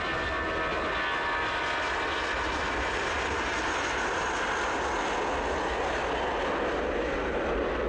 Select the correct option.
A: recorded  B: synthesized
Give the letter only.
A